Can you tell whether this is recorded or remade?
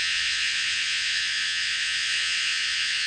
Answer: remade